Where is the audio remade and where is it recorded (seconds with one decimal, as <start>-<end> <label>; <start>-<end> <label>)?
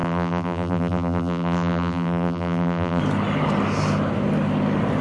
0.0-3.0 remade; 3.0-5.0 recorded